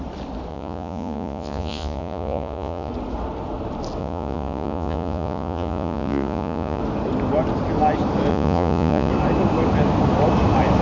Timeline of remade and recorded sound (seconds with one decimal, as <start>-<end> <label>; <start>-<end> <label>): 0.0-0.5 recorded; 0.5-2.9 remade; 2.9-4.0 recorded; 4.0-6.8 remade; 6.8-8.3 recorded; 8.3-9.1 remade; 9.1-10.8 recorded

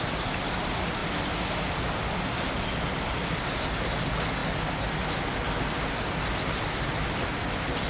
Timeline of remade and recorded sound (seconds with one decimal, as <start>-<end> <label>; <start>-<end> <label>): 0.0-7.9 recorded

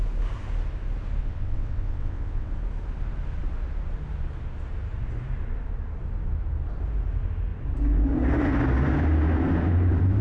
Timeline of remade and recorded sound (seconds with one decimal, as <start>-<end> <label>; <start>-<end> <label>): 0.0-1.2 recorded; 1.2-2.5 remade; 2.5-10.2 recorded